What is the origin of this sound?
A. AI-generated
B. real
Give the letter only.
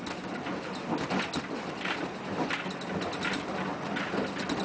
B